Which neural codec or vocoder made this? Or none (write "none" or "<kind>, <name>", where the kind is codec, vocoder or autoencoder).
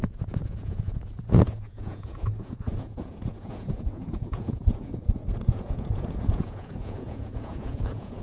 vocoder, Vocos